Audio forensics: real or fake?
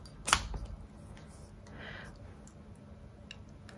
real